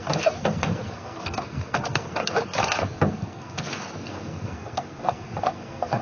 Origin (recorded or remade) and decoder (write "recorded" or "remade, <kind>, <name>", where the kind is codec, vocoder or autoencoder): remade, codec, SNAC